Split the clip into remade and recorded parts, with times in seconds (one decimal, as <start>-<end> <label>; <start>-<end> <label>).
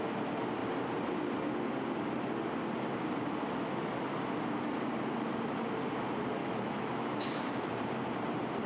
0.0-6.4 recorded; 6.4-7.7 remade; 7.7-8.7 recorded